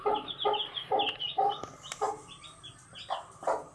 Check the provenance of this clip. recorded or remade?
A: recorded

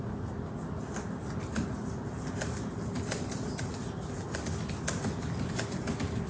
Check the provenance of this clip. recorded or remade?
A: recorded